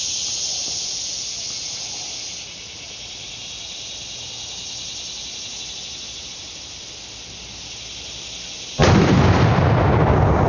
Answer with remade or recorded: recorded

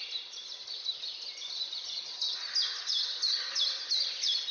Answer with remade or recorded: recorded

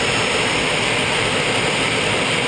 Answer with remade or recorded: recorded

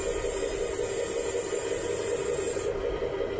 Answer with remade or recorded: recorded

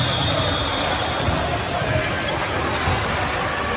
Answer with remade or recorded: recorded